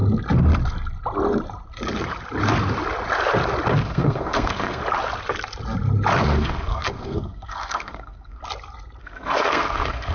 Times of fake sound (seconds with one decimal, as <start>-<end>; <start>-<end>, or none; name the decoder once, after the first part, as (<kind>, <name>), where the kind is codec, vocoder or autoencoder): 3.8-4.8 (codec, SNAC); 6.2-8.4; 9.0-10.1

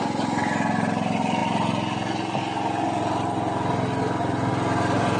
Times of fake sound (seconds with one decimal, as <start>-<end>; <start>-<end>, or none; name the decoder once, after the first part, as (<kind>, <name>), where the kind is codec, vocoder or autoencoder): none

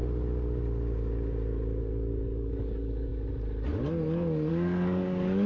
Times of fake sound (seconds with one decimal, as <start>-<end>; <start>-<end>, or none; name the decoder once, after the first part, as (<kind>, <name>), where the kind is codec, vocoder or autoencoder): 1.8-3.1 (codec, DAC); 4.5-5.5

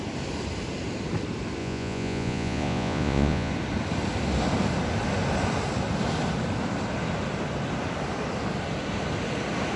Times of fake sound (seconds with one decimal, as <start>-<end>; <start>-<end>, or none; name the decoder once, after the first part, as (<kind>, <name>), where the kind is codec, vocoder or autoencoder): 1.6-3.5 (vocoder, Vocos)

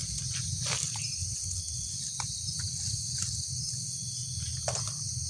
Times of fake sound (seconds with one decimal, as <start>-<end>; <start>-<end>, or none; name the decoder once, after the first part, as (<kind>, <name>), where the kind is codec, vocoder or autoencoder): none

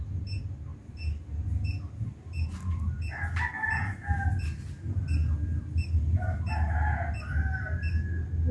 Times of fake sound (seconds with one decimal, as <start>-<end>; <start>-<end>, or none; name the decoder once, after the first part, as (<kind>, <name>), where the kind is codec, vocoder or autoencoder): none

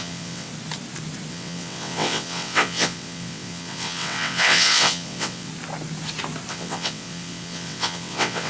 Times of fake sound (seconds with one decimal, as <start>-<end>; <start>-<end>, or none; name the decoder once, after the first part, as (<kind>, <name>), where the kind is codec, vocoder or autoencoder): 0.0-0.5 (vocoder, WaveNeXt); 1.3-5.5; 6.5-8.5